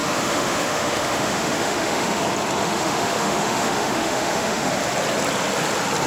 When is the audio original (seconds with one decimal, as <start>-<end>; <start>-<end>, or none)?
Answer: 2.2-2.6; 4.7-6.1